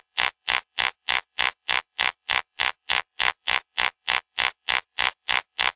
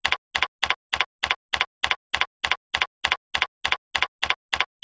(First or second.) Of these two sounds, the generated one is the first